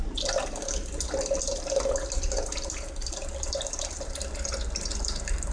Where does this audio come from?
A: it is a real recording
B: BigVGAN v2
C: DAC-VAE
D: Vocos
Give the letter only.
A